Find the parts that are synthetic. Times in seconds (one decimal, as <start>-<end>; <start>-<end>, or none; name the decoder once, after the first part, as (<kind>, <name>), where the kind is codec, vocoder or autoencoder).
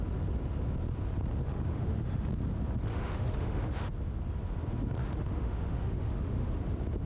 1.7-2.3 (autoencoder, DAC-VAE); 2.9-3.9; 5.0-6.5